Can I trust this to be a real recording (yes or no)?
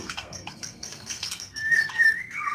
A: no